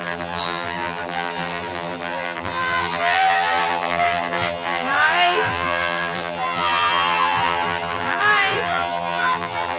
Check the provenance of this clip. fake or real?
fake